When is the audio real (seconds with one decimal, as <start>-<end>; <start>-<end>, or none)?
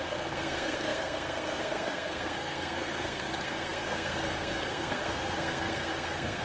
none